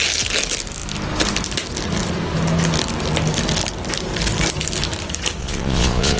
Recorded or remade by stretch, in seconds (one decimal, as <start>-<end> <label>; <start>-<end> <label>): 0.0-5.4 recorded; 5.4-6.2 remade